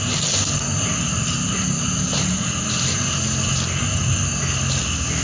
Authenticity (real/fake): real